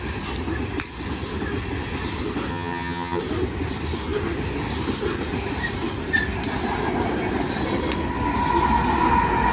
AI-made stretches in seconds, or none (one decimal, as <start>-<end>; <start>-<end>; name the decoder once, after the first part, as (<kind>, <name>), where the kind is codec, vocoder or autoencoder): 2.5-3.2 (vocoder, HiFi-GAN)